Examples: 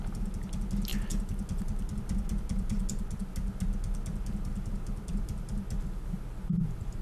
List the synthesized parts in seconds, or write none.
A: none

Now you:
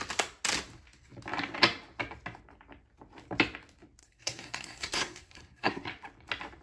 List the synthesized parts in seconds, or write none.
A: 4.0-5.9 (codec, SNAC)

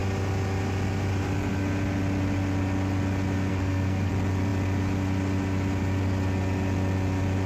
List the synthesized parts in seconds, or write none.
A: 3.5-4.1 (codec, SNAC)